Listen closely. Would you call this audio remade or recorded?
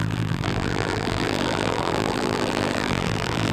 remade